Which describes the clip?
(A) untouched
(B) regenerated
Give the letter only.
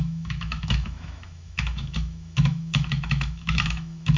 B